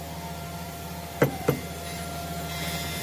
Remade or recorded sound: recorded